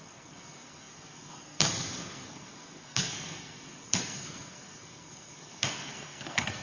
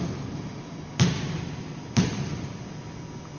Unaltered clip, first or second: second